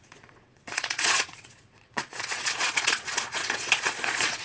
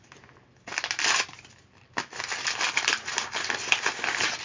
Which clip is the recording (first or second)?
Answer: second